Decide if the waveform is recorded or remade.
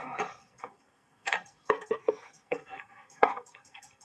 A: remade